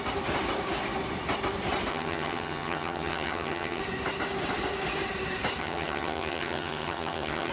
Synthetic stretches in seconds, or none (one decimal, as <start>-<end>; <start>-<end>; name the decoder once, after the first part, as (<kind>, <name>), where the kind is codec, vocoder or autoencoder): 1.9-3.8 (vocoder, HiFi-GAN); 5.6-7.5